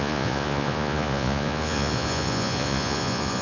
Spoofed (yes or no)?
yes